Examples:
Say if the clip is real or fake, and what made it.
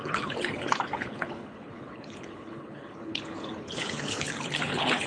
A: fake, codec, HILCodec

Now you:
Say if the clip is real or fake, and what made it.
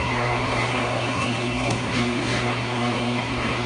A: fake, codec, SNAC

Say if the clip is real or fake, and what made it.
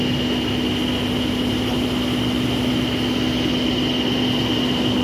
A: real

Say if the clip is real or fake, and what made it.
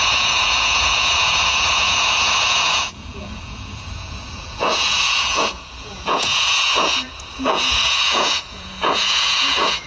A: fake, vocoder, Vocos